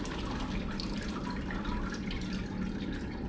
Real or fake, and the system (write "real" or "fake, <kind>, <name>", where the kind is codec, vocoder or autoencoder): real